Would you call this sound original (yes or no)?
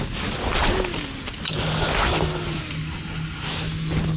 yes